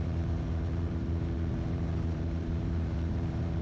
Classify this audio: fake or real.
fake